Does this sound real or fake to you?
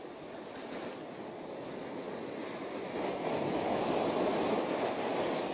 real